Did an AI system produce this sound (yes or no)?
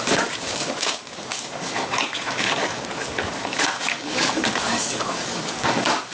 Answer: yes